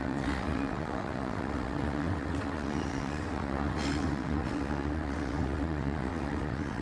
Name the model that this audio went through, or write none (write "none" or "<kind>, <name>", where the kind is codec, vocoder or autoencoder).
vocoder, WaveNeXt